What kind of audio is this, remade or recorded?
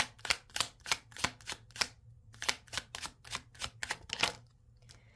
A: recorded